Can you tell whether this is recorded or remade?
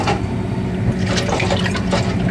remade